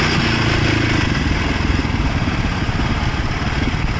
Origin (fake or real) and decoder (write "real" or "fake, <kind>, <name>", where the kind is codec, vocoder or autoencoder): real